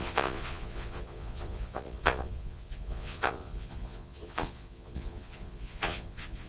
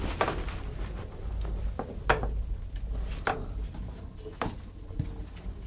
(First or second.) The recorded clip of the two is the second